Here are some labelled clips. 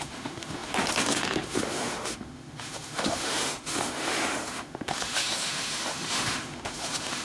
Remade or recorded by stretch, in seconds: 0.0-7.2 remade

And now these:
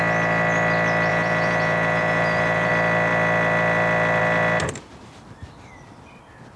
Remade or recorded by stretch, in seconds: 0.0-1.1 recorded; 1.1-2.7 remade; 2.7-6.6 recorded

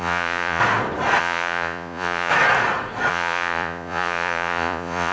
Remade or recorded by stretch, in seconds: 0.0-0.6 remade; 0.6-1.2 recorded; 1.2-2.3 remade; 2.3-3.1 recorded; 3.1-5.1 remade

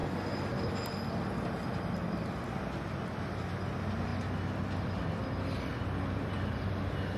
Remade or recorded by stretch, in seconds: 0.0-7.2 recorded

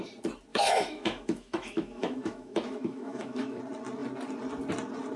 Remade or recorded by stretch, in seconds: 0.0-0.5 recorded; 0.5-3.6 remade; 3.6-5.2 recorded

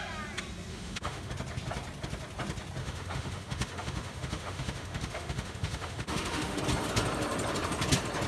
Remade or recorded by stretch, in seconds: 0.0-0.7 recorded; 0.7-1.3 remade; 1.3-2.8 recorded; 2.8-6.6 remade; 6.6-8.3 recorded

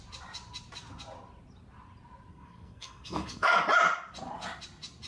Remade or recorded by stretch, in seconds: 0.0-2.3 recorded; 2.3-3.6 remade; 3.6-5.1 recorded